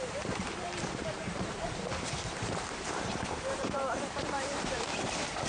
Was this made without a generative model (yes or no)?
no